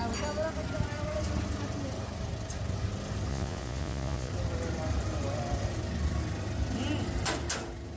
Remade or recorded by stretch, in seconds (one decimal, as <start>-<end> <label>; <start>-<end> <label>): 0.0-3.3 recorded; 3.3-4.3 remade; 4.3-8.0 recorded